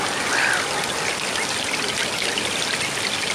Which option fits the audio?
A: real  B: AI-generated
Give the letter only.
A